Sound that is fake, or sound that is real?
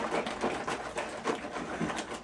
real